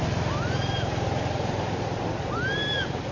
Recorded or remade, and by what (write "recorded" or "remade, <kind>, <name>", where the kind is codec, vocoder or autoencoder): recorded